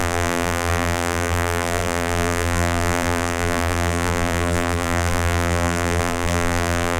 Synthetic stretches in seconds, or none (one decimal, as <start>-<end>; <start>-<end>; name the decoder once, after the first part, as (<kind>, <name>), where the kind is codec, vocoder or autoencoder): 0.0-7.0 (vocoder, BigVGAN v2)